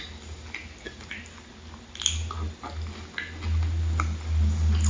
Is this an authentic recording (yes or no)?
yes